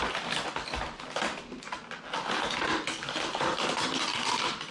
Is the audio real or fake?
real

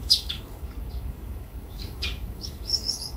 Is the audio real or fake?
fake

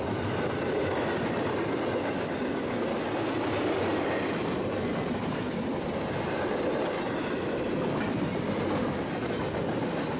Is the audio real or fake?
real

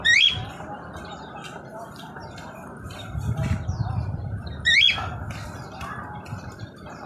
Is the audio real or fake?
fake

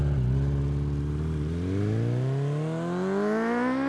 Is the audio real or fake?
real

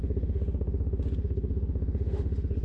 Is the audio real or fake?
fake